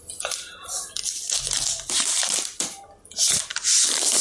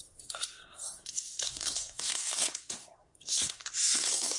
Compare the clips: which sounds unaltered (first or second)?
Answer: first